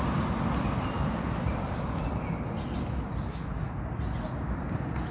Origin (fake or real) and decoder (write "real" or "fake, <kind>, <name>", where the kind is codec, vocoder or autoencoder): real